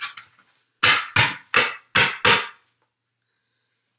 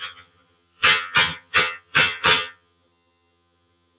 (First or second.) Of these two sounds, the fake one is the second